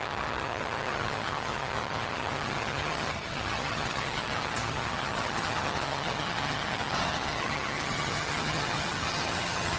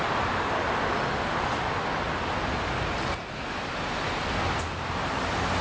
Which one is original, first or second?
second